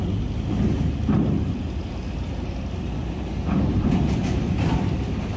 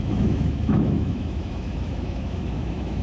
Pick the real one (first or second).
first